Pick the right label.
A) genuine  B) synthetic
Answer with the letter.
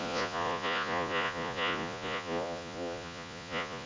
B